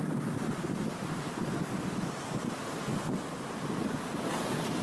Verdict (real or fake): real